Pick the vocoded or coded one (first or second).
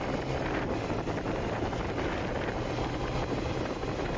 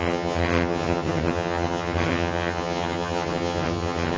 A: second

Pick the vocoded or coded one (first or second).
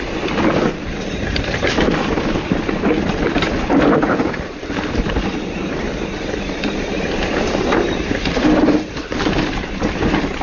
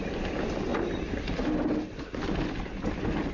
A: first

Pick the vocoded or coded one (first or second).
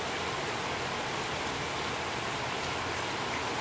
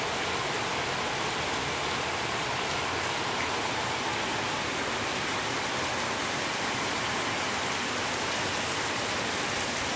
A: second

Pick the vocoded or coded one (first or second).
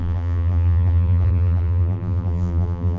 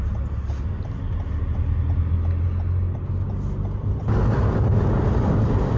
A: first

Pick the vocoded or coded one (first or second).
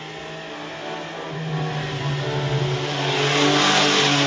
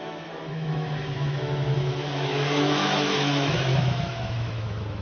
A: second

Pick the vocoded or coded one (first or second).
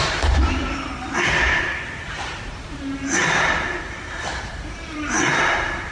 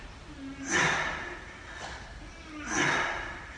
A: first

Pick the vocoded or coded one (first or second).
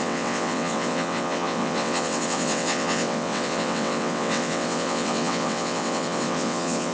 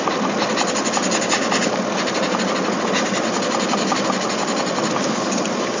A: first